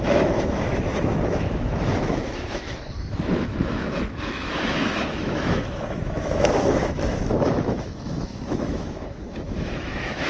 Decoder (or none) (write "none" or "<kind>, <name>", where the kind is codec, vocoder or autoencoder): autoencoder, DAC-VAE